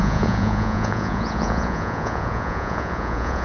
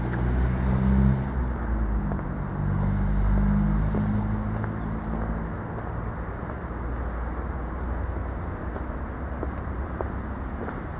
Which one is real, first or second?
second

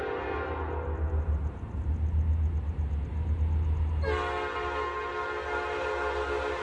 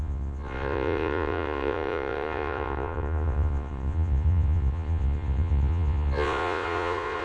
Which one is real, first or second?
first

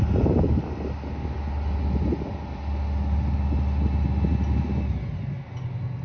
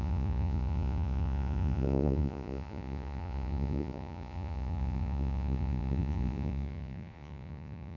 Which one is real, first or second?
first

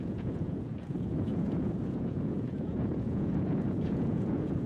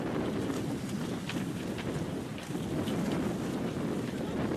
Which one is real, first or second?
second